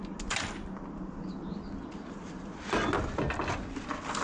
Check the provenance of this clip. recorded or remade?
recorded